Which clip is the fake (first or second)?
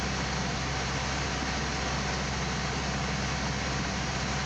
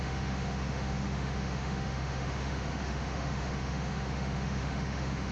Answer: second